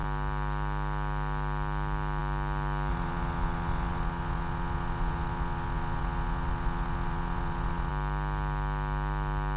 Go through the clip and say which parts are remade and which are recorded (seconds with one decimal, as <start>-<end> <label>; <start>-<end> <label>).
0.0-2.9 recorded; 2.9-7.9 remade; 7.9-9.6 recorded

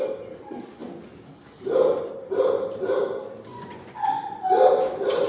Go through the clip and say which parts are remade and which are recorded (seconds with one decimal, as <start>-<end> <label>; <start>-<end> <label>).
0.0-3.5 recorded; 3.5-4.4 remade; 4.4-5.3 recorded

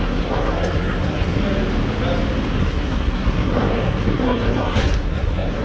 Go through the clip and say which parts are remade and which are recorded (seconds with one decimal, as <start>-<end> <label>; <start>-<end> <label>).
0.0-1.4 remade; 1.4-2.6 recorded; 2.6-5.6 remade

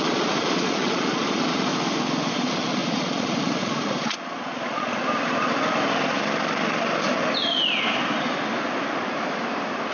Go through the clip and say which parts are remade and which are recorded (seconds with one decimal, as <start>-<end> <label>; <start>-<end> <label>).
0.0-1.7 remade; 1.7-2.3 recorded; 2.3-5.0 remade; 5.0-9.9 recorded

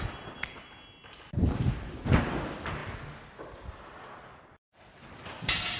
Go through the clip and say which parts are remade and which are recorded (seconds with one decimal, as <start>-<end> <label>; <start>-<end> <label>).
0.0-5.8 recorded